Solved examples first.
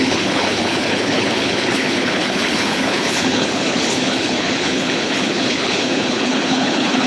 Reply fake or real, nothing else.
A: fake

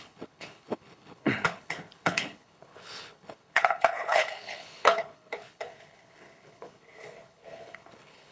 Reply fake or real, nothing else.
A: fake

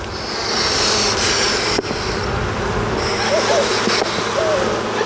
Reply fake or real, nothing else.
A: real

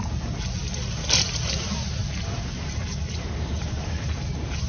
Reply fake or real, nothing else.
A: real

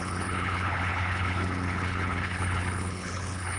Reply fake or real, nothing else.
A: fake